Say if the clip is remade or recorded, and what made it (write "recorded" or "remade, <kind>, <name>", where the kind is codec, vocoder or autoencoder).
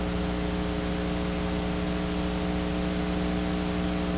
recorded